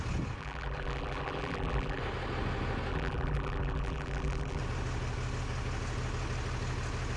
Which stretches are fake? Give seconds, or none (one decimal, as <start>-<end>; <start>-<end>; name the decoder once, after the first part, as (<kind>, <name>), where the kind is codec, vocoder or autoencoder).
0.4-2.0 (vocoder, BigVGAN v2); 2.9-4.6